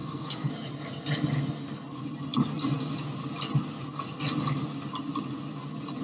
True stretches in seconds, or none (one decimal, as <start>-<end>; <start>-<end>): 0.5-6.0